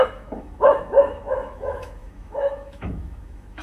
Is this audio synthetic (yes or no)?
yes